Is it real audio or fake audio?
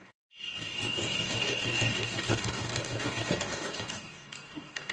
fake